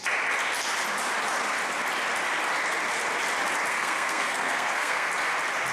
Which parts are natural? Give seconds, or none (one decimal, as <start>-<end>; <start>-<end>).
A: 0.0-3.7; 5.1-5.7